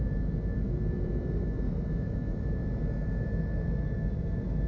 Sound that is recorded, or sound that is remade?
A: recorded